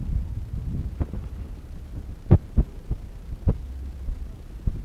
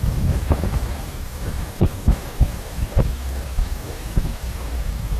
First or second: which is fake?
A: second